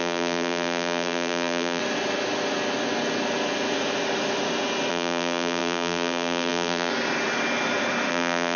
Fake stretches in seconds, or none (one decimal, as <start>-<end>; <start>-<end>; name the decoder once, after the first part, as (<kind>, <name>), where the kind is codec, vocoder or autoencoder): 0.0-1.8 (vocoder, BigVGAN v2); 4.9-6.9; 8.1-8.6